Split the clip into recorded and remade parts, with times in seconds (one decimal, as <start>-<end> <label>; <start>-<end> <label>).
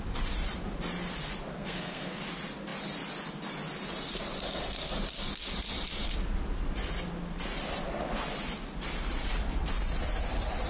0.0-1.6 recorded; 1.6-2.2 remade; 2.2-10.7 recorded